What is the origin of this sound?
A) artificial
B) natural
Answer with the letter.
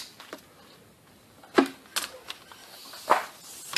B